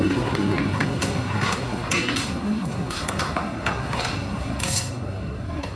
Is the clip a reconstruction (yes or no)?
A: yes